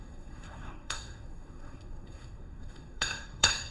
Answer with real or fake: fake